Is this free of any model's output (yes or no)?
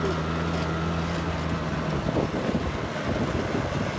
yes